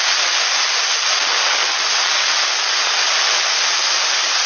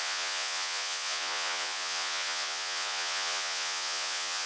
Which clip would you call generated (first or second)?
second